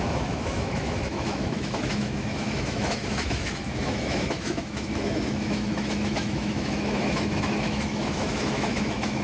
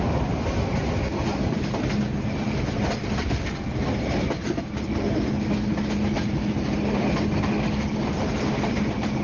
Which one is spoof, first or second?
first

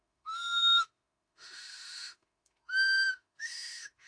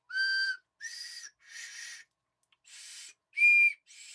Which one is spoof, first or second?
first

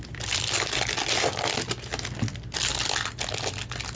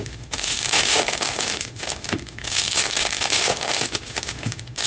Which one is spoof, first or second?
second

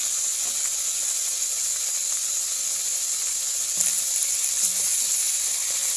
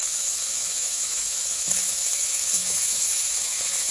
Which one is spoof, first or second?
second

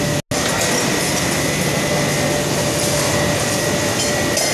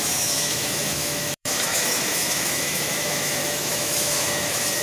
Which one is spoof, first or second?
second